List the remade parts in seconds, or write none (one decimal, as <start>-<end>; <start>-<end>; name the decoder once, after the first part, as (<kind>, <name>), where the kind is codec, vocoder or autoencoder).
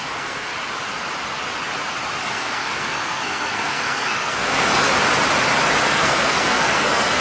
0.0-0.5 (codec, SNAC); 2.2-4.7; 5.9-7.2